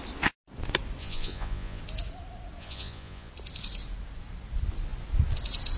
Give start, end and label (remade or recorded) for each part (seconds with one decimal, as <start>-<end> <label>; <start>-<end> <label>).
0.0-1.0 recorded; 1.0-1.8 remade; 1.8-2.6 recorded; 2.6-3.3 remade; 3.3-5.8 recorded